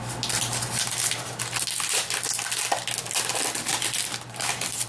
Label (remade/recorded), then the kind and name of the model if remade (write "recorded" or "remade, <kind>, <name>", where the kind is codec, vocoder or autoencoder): recorded